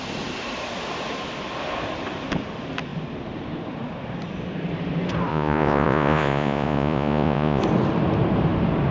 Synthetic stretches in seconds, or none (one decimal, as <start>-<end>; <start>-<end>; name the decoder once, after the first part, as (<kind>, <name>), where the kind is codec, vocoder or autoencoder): 5.3-7.6 (vocoder, Vocos)